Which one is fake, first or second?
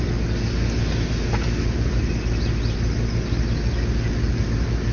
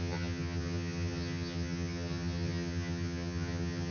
second